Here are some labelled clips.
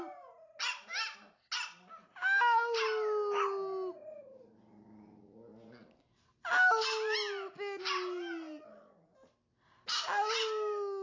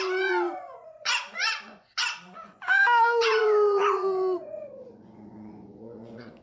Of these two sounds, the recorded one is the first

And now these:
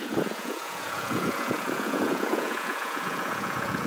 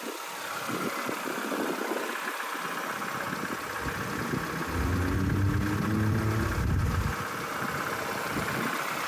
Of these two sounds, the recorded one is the second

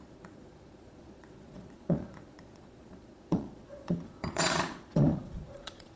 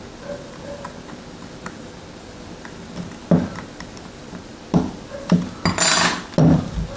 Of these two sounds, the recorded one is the second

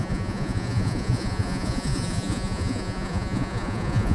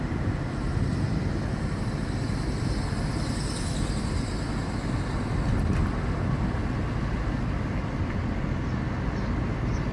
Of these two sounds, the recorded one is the second